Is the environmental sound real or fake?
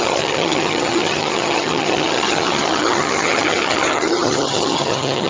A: fake